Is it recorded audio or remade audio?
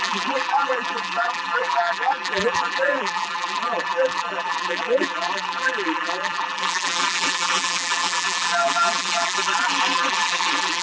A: remade